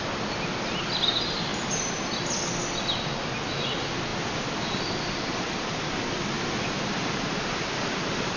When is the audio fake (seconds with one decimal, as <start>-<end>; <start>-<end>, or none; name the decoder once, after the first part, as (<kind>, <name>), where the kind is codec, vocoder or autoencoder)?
1.5-2.2 (vocoder, BigVGAN v2); 4.1-6.3